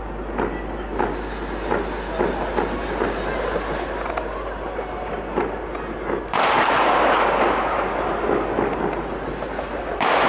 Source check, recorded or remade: recorded